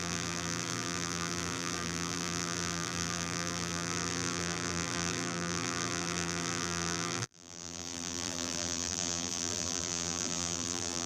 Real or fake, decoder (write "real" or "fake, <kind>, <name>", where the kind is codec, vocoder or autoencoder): fake, vocoder, BigVGAN v2